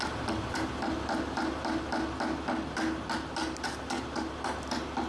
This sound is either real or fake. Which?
real